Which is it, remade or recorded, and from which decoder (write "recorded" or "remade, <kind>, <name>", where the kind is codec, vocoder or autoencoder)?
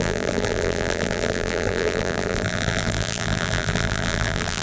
remade, vocoder, BigVGAN v2